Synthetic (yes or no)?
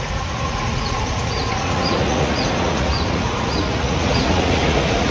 yes